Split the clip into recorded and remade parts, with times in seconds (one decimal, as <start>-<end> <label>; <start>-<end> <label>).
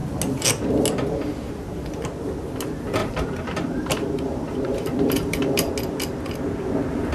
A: 0.0-3.0 recorded; 3.0-5.7 remade; 5.7-7.1 recorded